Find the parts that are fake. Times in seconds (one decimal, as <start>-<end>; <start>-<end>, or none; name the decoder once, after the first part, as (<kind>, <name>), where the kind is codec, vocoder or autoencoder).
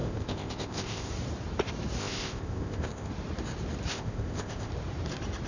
0.0-1.1 (codec, ZipCodec); 2.0-3.1; 3.9-4.7